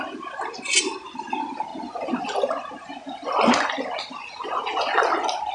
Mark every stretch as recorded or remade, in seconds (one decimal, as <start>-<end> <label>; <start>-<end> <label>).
0.0-1.7 recorded; 1.7-2.2 remade; 2.2-4.2 recorded; 4.2-5.0 remade; 5.0-5.5 recorded